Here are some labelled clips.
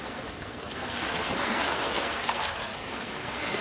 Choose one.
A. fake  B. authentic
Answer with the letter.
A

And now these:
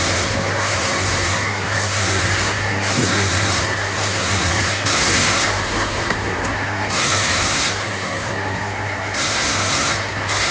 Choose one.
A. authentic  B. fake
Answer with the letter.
B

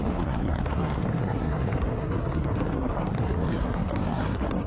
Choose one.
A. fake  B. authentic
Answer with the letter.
A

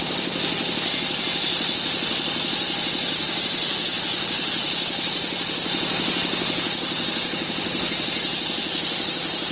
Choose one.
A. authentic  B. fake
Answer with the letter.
A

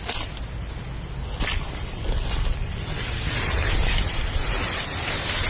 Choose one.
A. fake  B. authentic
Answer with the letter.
B